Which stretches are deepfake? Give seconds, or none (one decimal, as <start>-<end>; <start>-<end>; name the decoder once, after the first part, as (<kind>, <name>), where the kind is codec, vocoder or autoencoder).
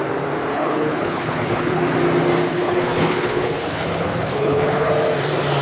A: 0.5-1.8 (codec, HILCodec); 2.5-4.9